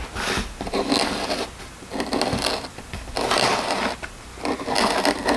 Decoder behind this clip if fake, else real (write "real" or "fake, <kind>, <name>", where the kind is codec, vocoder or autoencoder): real